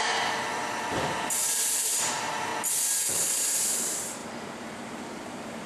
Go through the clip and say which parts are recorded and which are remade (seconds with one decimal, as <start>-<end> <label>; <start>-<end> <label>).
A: 0.0-2.5 remade; 2.5-3.0 recorded; 3.0-5.7 remade